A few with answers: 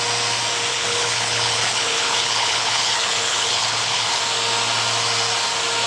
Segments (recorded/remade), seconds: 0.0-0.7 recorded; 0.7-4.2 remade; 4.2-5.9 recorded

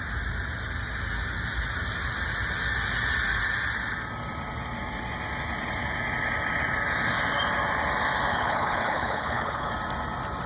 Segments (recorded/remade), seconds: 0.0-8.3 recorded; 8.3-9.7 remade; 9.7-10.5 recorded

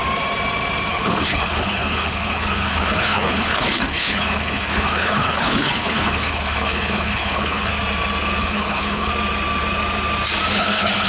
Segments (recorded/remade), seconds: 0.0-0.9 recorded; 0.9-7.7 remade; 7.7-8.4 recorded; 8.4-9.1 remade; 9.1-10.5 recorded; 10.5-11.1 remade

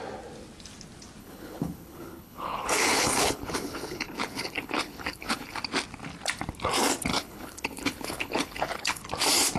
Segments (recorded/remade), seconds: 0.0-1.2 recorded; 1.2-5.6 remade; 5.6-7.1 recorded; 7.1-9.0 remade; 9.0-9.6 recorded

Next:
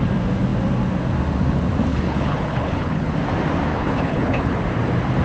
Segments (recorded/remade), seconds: 0.0-1.9 recorded; 1.9-3.1 remade; 3.1-3.7 recorded; 3.7-4.6 remade; 4.6-5.2 recorded

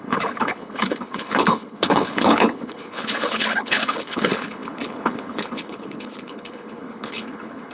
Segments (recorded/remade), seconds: 0.0-7.7 remade